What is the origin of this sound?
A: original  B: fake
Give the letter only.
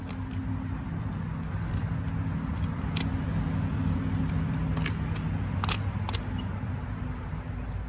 A